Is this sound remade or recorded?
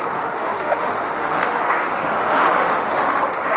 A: remade